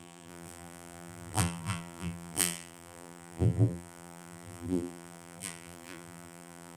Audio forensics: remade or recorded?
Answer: remade